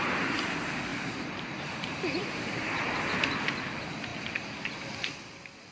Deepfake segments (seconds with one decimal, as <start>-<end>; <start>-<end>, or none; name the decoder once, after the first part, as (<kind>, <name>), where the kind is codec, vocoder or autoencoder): 0.9-2.9 (vocoder, BigVGAN v2)